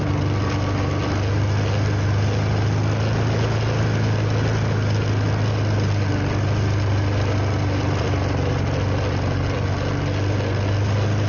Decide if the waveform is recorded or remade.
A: recorded